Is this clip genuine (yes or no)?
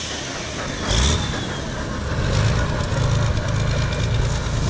yes